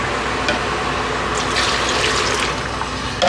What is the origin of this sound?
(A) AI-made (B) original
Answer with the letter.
B